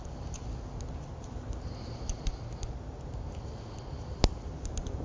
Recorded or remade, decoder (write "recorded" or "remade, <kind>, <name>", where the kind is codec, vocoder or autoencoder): recorded